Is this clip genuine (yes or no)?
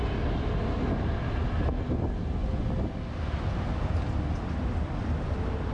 yes